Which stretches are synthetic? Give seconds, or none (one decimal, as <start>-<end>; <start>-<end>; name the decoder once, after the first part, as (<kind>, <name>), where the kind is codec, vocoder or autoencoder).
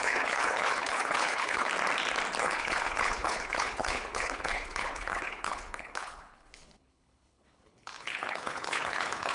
0.0-1.7 (codec, HILCodec); 2.4-9.3